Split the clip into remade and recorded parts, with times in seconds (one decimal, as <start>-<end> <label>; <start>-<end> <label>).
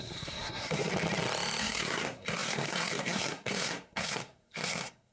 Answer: 0.0-0.9 remade; 0.9-1.6 recorded; 1.6-5.1 remade